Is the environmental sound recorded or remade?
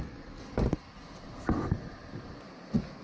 recorded